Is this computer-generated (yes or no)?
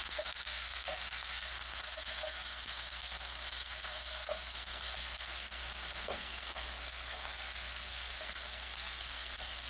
yes